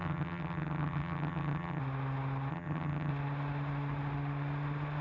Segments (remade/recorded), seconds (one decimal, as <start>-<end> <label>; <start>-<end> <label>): 0.0-1.8 remade; 1.8-2.5 recorded; 2.5-3.1 remade; 3.1-5.0 recorded